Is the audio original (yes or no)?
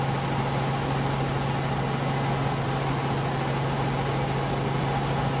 yes